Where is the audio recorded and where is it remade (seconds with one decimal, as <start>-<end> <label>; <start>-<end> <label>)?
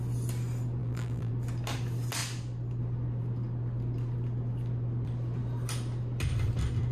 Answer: 0.0-0.8 recorded; 0.8-1.3 remade; 1.3-6.9 recorded